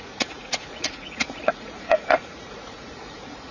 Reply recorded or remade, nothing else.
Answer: remade